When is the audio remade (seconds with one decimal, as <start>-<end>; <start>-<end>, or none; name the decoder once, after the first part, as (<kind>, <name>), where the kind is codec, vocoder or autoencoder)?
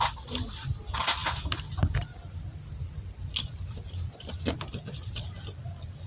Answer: none